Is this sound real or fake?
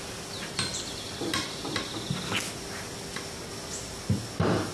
real